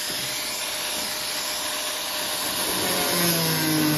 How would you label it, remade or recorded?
recorded